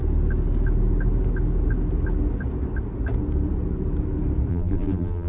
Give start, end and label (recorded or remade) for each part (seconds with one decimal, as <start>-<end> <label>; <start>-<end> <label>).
0.0-4.5 recorded; 4.5-5.3 remade

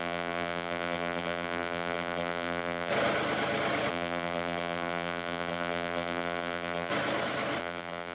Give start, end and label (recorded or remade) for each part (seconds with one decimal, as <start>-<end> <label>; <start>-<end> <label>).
0.0-2.9 remade; 2.9-3.9 recorded; 3.9-6.9 remade; 6.9-7.6 recorded; 7.6-8.1 remade